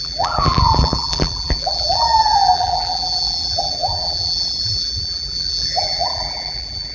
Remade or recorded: remade